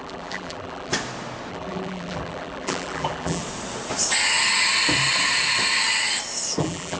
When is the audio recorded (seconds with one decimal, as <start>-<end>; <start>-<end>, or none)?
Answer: 0.9-1.5; 3.4-6.6